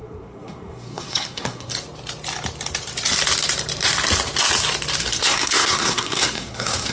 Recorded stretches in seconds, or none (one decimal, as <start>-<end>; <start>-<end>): 1.7-5.0